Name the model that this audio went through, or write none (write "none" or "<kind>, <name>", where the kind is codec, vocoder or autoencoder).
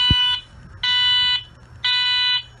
none